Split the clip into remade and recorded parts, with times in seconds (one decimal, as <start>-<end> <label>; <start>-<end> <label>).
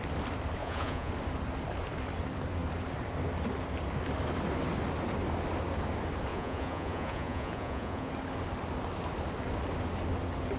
0.0-0.6 recorded; 0.6-1.1 remade; 1.1-6.3 recorded; 6.3-8.1 remade; 8.1-10.6 recorded